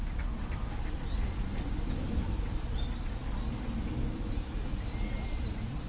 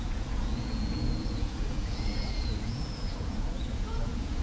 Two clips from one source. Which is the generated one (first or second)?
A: second